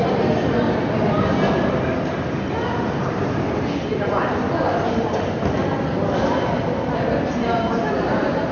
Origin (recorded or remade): recorded